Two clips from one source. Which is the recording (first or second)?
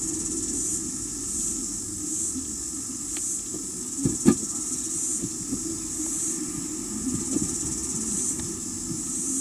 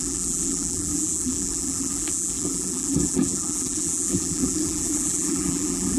first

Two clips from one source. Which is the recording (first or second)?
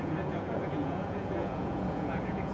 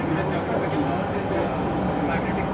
second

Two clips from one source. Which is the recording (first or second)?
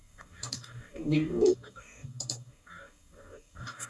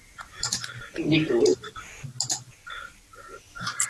second